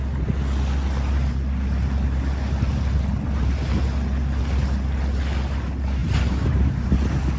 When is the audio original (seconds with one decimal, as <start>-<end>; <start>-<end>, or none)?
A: 0.0-6.0; 6.9-7.4